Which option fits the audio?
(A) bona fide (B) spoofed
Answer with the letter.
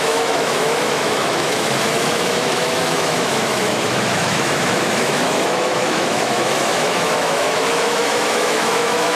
B